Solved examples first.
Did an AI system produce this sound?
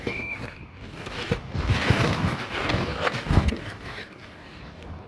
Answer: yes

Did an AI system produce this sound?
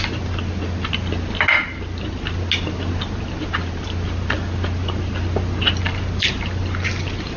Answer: no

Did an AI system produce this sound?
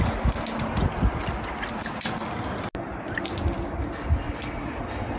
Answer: no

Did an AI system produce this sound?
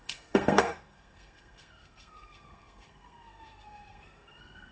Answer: yes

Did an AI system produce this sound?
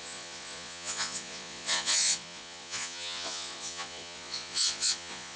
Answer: yes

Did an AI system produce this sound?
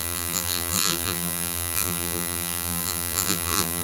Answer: yes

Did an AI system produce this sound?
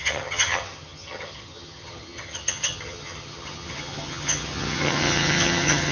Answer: yes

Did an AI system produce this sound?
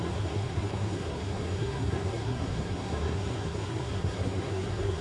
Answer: yes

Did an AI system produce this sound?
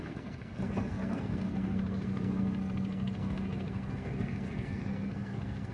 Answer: yes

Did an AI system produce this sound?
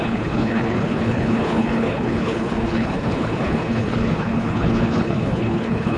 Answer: yes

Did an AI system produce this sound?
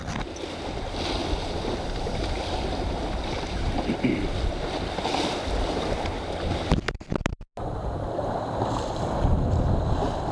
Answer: no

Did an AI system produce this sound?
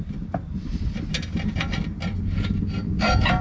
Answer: no